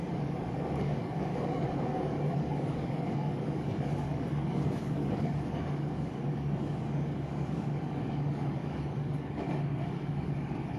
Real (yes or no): no